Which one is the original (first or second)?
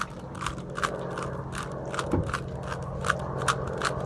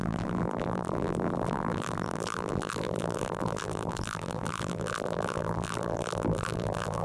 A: first